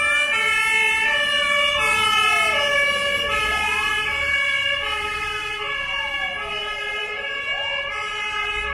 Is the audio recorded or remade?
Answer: recorded